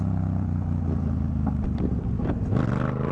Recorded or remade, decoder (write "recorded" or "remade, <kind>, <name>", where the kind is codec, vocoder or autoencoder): recorded